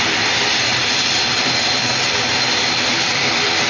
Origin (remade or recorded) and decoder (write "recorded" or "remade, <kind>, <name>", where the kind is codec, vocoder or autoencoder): remade, vocoder, BigVGAN v2